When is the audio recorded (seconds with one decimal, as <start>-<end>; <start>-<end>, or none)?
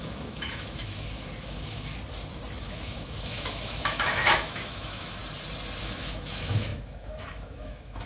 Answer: 1.9-2.6; 5.2-5.8